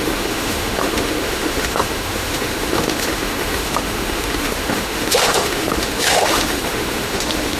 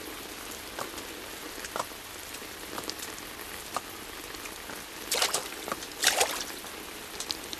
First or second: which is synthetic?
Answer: first